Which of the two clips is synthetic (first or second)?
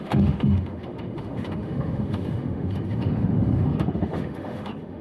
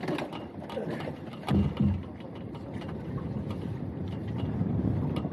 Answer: first